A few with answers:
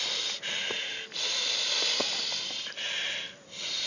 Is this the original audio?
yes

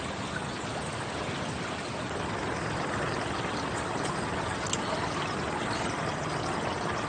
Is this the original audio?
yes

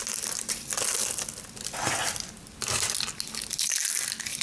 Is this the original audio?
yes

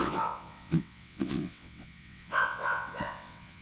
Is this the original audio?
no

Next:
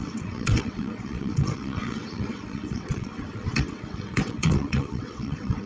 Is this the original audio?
no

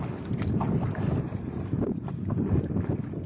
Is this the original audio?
yes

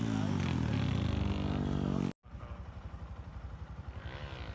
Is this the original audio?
yes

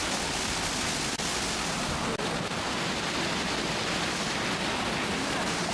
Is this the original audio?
yes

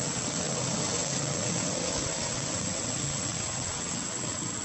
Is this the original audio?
no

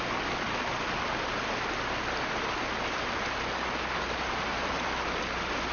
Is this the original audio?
yes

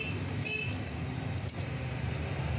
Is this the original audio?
yes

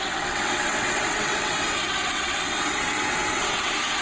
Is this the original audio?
no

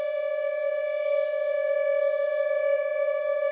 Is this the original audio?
no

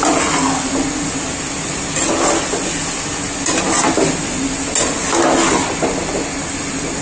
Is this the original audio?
yes